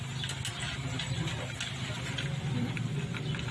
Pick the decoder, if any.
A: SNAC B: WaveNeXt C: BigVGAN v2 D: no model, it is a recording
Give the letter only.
D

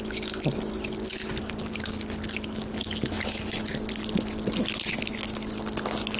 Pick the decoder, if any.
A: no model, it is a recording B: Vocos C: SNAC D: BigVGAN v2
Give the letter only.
A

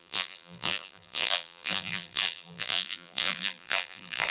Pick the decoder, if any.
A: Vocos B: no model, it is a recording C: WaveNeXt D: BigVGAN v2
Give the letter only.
D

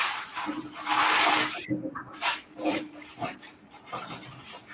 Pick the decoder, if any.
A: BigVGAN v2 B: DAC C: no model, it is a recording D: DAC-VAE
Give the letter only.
A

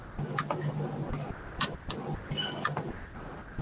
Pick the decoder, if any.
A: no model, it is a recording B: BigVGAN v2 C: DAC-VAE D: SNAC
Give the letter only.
A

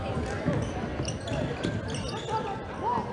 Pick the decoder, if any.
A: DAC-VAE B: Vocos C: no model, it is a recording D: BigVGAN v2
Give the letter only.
C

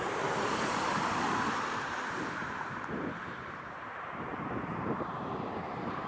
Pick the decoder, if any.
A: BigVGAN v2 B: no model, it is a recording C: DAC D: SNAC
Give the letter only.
A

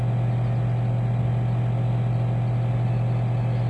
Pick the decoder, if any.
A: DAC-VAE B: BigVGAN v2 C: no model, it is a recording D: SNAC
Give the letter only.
C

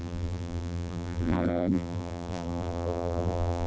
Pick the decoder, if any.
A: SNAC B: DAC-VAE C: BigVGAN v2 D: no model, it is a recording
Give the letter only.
C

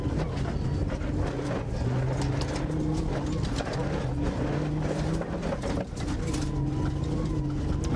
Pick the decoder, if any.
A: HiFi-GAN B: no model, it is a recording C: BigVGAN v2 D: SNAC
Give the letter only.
B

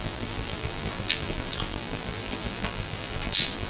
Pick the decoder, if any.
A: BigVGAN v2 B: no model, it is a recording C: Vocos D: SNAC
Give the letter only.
A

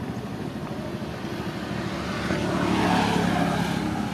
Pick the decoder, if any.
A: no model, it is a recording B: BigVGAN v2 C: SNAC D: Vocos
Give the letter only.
A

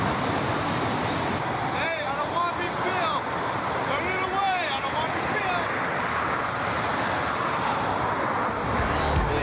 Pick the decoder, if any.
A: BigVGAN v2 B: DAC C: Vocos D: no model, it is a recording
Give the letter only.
A